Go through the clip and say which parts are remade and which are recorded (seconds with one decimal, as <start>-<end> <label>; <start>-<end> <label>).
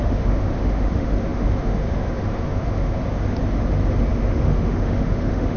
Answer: 0.0-3.0 remade; 3.0-4.1 recorded; 4.1-5.6 remade